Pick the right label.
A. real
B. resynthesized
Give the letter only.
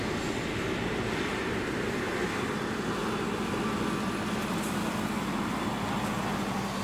A